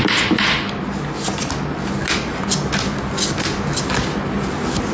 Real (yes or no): yes